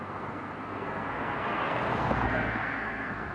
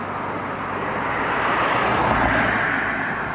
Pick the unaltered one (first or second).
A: second